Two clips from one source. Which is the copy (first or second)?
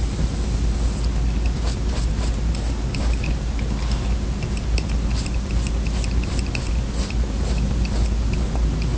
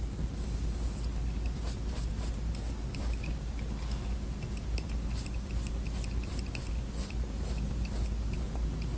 second